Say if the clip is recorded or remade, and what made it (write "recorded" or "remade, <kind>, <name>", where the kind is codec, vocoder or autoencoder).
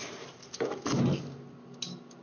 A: recorded